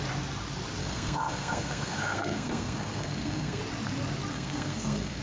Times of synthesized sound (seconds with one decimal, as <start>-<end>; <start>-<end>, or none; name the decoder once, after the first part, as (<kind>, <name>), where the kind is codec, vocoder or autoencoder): 0.8-3.6 (codec, SNAC); 4.3-5.2